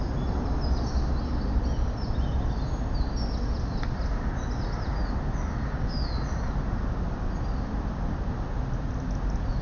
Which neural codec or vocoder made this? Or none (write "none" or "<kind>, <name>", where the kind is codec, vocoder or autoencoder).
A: none